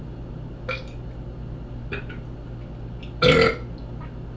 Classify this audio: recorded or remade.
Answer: recorded